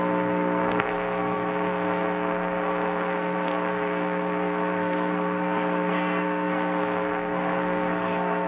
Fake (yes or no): yes